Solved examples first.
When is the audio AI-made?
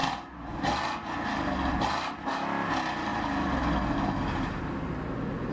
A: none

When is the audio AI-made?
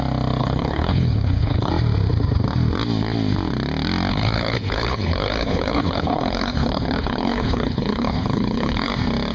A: 0.4-1.7 (codec, HILCodec); 4.1-8.9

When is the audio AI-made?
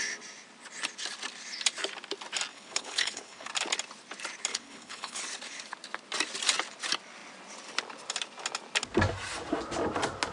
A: 2.5-3.5 (codec, HILCodec); 4.5-5.2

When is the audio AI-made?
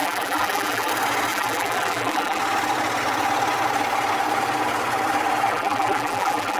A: 0.0-0.9 (vocoder, BigVGAN v2); 1.3-2.4; 5.5-6.6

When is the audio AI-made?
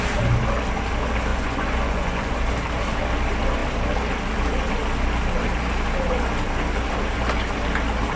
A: 1.3-2.3 (vocoder, Vocos)